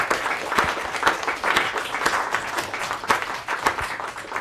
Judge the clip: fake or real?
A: real